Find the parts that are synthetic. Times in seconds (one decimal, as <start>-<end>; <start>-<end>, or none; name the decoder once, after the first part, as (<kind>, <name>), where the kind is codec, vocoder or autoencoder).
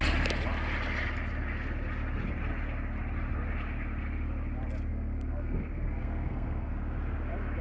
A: 4.9-6.7 (codec, SNAC)